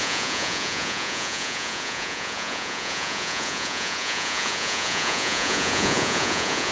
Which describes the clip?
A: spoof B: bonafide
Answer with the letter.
A